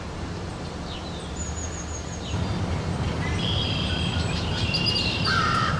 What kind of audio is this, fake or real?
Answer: fake